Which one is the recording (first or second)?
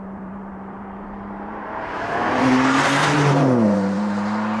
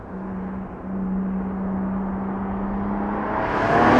second